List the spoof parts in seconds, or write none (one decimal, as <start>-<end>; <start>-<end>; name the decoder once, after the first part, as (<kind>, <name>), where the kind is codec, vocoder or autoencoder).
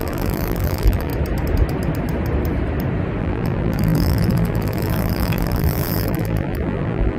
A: 0.0-1.1 (vocoder, BigVGAN v2); 3.2-7.2